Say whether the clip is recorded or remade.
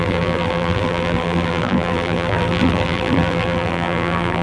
remade